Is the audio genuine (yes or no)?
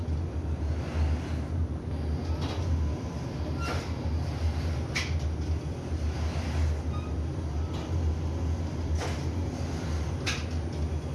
yes